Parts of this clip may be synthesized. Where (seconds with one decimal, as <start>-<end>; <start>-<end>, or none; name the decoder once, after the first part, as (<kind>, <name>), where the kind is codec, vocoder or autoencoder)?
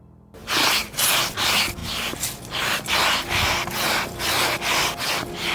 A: 0.4-1.2 (vocoder, BigVGAN v2); 1.8-5.1